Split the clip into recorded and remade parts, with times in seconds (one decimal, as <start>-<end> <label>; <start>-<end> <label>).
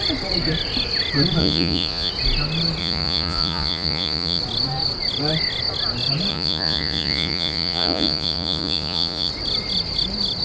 0.0-1.4 recorded; 1.4-2.1 remade; 2.1-2.8 recorded; 2.8-4.4 remade; 4.4-6.3 recorded; 6.3-9.3 remade; 9.3-10.4 recorded